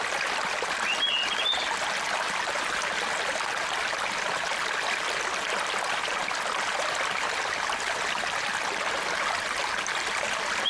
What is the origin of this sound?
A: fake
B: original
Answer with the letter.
B